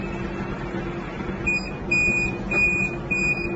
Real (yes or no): yes